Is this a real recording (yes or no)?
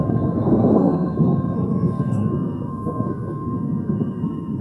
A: no